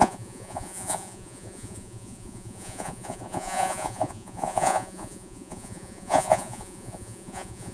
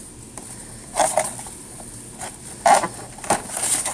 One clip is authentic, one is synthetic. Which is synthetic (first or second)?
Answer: first